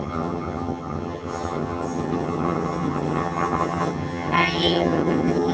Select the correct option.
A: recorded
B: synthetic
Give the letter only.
B